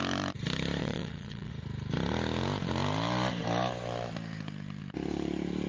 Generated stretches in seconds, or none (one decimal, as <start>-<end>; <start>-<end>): 0.8-1.5